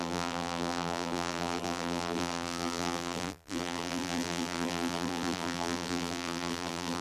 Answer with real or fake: fake